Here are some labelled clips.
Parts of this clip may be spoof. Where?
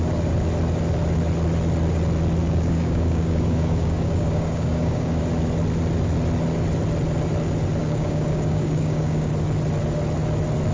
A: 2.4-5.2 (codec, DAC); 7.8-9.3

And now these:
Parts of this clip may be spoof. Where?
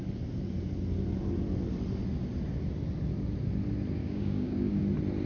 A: 4.0-4.8 (codec, DAC)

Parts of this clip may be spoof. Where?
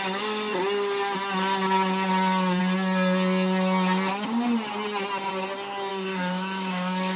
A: 5.9-7.2 (codec, DAC)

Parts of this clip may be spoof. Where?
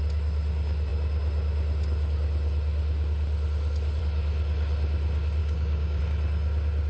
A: 5.4-6.0 (codec, DAC)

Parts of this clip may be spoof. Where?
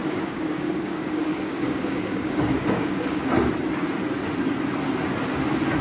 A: 0.0-3.2 (codec, DAC)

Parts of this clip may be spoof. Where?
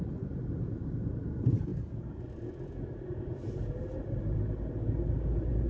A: none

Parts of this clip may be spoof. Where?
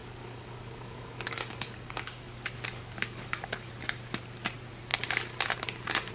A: 0.0-3.7 (codec, DAC)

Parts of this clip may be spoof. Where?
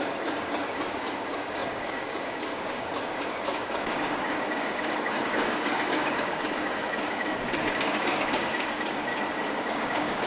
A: 0.0-9.1 (codec, DAC); 9.7-10.3